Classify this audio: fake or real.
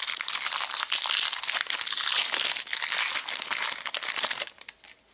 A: real